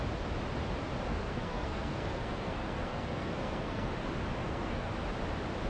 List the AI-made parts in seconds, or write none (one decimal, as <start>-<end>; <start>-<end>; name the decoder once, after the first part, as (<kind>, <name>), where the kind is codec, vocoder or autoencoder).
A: 1.1-3.9 (codec, SNAC); 4.4-4.9